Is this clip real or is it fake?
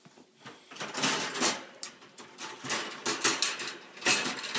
real